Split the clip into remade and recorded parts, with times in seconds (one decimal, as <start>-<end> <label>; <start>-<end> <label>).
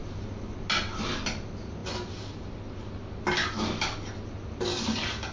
0.0-1.8 recorded; 1.8-2.6 remade; 2.6-5.3 recorded